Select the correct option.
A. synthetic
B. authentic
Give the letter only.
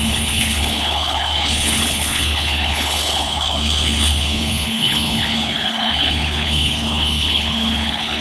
A